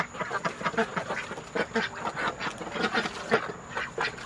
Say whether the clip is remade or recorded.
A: recorded